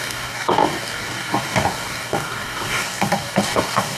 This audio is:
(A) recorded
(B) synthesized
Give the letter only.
B